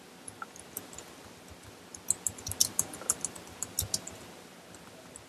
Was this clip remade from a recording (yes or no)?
no